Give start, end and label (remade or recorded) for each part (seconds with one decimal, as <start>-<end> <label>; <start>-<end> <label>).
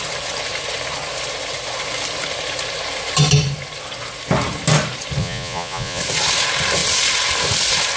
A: 0.0-5.2 recorded; 5.2-6.0 remade; 6.0-8.0 recorded